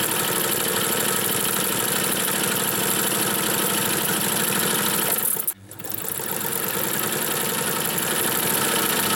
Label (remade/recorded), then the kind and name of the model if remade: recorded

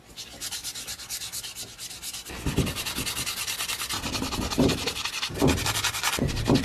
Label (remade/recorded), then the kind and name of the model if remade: recorded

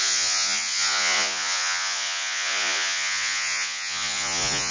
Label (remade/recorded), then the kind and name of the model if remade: remade, vocoder, Vocos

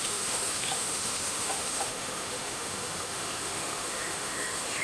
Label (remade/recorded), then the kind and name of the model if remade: remade, autoencoder, DAC-VAE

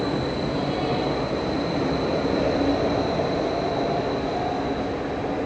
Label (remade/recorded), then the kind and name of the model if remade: recorded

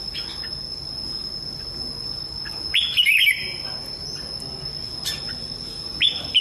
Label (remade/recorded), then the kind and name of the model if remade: recorded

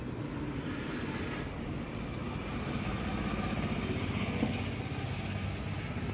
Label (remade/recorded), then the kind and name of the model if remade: recorded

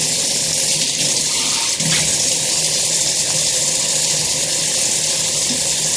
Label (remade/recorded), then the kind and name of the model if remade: remade, vocoder, BigVGAN v2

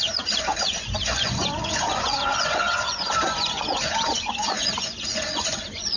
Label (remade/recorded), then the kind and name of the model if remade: remade, vocoder, Vocos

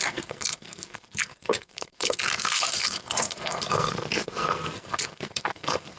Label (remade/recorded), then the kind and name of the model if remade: remade, codec, SNAC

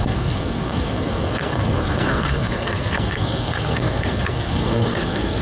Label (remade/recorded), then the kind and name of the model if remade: remade, codec, SNAC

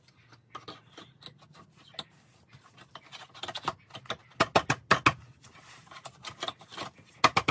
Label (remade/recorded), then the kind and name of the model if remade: recorded